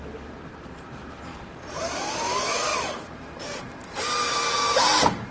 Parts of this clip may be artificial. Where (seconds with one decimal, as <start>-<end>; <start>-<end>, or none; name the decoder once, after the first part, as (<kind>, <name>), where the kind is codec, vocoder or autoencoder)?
0.0-3.8 (vocoder, BigVGAN v2)